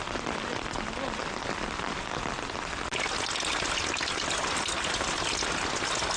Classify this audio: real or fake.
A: real